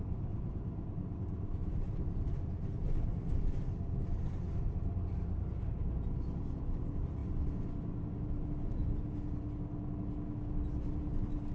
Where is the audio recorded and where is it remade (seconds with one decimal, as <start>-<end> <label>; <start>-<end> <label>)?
0.0-11.5 recorded